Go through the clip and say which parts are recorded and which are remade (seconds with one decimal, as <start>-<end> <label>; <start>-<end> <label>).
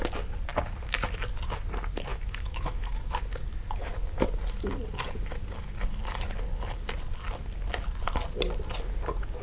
0.0-2.1 recorded; 2.1-3.2 remade; 3.2-9.4 recorded